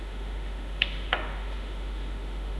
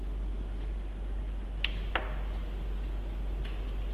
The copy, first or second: first